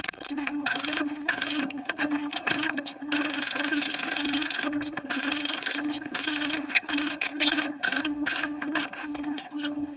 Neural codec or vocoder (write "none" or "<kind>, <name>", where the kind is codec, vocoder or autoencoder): codec, SNAC